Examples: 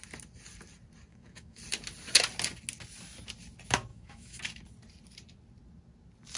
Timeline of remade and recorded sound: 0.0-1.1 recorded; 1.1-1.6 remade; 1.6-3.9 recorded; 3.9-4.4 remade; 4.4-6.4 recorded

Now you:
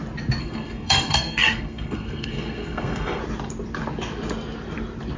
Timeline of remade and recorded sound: 0.0-0.4 recorded; 0.4-3.2 remade; 3.2-5.2 recorded

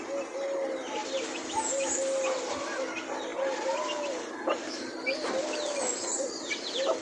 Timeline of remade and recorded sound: 0.0-1.0 recorded; 1.0-1.9 remade; 1.9-3.3 recorded; 3.3-4.6 remade; 4.6-7.0 recorded

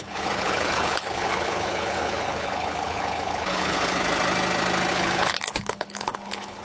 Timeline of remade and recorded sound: 0.0-4.0 remade; 4.0-4.9 recorded; 4.9-6.6 remade

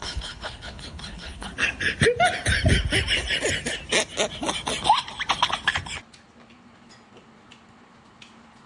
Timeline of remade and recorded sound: 0.0-1.5 remade; 1.5-8.7 recorded

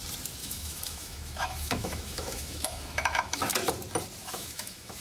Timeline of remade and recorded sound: 0.0-0.4 recorded; 0.4-3.4 remade; 3.4-4.2 recorded; 4.2-5.0 remade